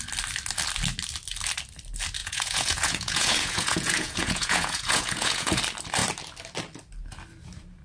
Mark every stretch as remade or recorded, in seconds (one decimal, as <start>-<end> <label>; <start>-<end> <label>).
0.0-2.2 recorded; 2.2-5.6 remade; 5.6-7.8 recorded